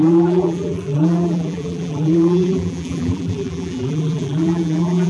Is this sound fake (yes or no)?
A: yes